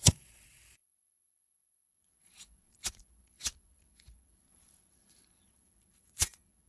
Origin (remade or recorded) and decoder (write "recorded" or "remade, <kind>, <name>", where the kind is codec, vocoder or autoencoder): remade, vocoder, Vocos